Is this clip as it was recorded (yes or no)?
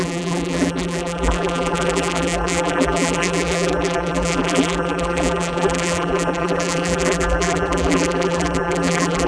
no